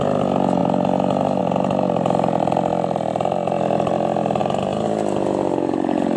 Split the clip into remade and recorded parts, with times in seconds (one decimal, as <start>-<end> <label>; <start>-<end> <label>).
0.0-4.4 recorded; 4.4-6.2 remade